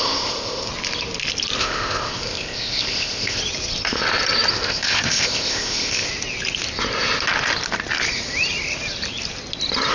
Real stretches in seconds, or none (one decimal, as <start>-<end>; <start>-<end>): 0.7-1.6; 3.4-4.5; 6.1-9.9